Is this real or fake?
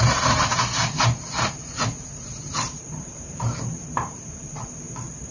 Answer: fake